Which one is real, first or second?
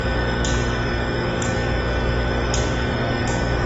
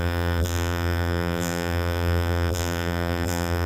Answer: first